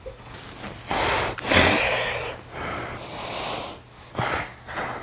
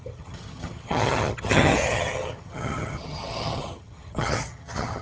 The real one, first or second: first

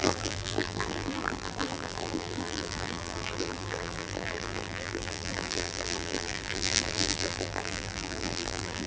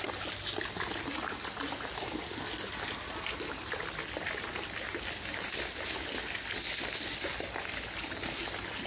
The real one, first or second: second